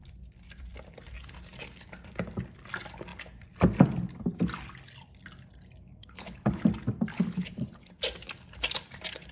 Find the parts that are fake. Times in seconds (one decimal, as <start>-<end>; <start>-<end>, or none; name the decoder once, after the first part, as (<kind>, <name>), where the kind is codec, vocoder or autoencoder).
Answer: 6.0-6.6 (codec, HILCodec); 7.1-8.0